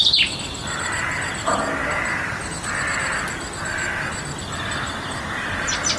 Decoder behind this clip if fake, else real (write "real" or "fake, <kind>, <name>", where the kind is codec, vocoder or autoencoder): real